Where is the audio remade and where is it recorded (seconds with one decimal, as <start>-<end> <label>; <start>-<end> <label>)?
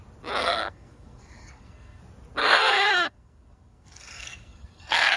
0.0-0.4 recorded; 0.4-2.0 remade; 2.0-2.4 recorded; 2.4-5.2 remade